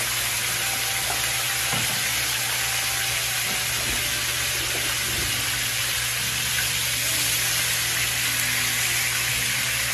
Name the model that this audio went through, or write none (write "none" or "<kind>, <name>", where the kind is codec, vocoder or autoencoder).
none